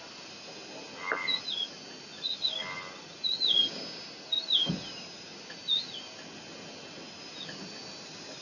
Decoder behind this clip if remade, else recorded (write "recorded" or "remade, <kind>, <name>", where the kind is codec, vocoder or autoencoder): recorded